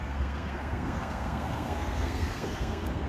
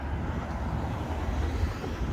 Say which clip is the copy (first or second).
first